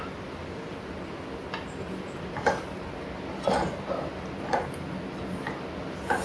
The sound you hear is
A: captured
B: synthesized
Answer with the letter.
A